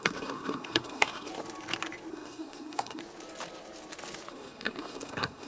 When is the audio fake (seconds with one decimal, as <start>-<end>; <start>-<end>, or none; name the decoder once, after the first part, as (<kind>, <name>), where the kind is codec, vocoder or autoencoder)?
0.0-1.3 (codec, SNAC); 2.1-3.0; 4.3-5.5